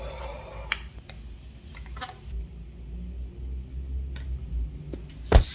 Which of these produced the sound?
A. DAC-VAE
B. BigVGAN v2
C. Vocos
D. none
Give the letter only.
D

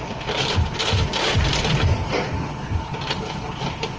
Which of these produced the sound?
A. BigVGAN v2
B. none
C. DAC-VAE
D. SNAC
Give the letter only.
A